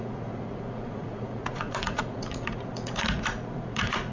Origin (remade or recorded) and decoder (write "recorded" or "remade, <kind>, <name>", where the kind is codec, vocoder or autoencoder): remade, vocoder, Vocos